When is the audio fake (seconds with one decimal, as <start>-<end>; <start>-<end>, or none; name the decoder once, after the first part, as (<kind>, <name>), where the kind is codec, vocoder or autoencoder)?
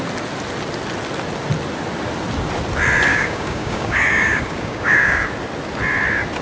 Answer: 3.1-5.3 (codec, DAC)